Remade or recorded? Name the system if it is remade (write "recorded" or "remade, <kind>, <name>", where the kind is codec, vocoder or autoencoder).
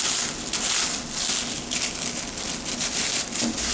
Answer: recorded